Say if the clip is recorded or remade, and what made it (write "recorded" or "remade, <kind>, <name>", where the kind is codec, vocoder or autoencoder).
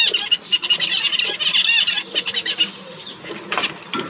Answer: recorded